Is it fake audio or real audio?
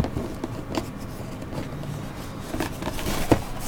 real